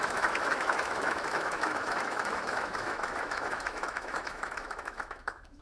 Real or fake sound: fake